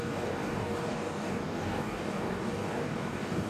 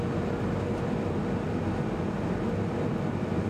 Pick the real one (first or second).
second